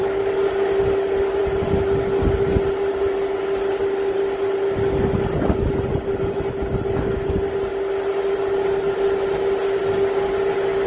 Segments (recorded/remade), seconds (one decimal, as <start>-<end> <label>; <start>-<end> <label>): 0.0-10.9 recorded